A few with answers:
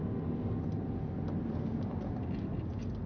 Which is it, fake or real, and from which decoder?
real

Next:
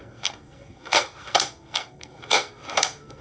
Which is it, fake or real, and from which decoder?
fake, codec, SNAC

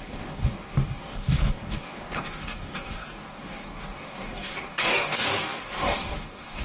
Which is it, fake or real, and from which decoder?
fake, codec, DAC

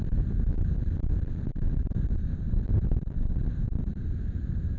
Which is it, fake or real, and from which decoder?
fake, vocoder, BigVGAN v2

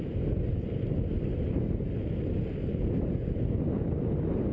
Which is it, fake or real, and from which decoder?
real